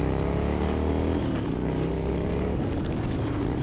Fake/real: fake